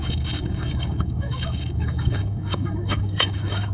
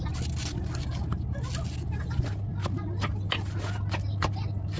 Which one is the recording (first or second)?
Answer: second